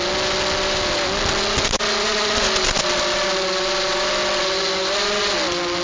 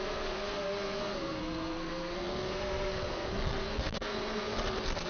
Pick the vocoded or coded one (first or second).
second